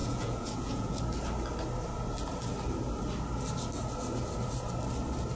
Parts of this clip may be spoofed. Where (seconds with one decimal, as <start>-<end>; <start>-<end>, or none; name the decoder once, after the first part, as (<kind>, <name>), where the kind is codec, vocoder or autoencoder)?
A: 0.0-1.0 (vocoder, Vocos)